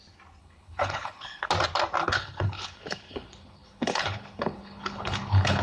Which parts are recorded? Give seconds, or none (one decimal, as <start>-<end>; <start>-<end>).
0.0-0.4; 1.4-2.0